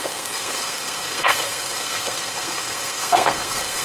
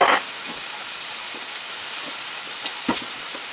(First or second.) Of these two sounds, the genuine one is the second